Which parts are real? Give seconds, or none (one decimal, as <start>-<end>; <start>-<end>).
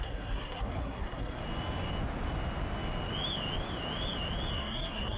1.4-4.5